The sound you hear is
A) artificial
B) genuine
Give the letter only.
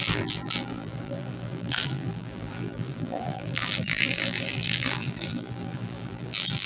A